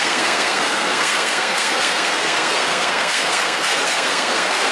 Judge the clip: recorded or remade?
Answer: remade